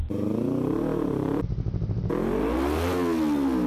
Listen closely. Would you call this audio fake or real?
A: real